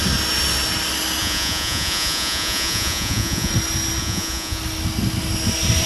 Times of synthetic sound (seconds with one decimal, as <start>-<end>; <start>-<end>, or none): 1.2-3.5; 4.0-4.6